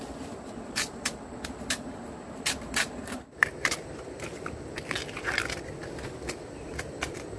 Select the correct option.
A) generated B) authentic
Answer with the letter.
A